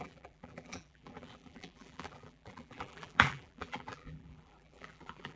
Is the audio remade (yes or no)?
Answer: yes